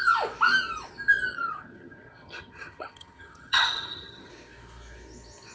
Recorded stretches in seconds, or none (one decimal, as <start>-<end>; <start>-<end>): 0.0-1.3; 4.3-5.5